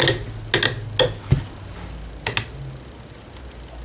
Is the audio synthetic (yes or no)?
no